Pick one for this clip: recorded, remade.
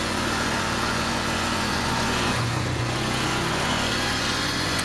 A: remade